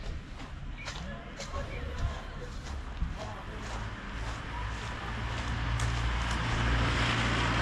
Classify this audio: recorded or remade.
recorded